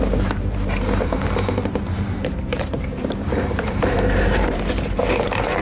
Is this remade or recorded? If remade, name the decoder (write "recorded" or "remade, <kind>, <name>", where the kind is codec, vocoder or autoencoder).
remade, vocoder, BigVGAN v2